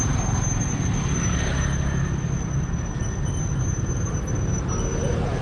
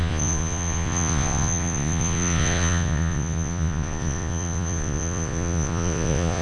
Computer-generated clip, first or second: second